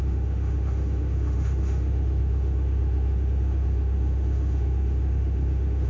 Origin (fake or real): fake